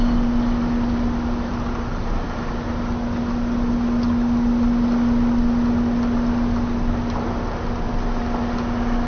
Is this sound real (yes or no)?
yes